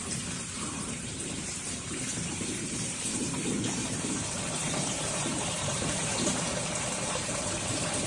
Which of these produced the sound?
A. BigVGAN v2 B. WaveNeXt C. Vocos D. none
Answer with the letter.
A